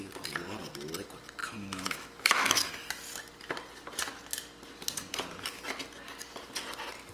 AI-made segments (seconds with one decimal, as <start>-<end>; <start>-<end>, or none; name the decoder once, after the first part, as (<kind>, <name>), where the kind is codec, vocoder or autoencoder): 1.4-2.7 (autoencoder, DAC-VAE)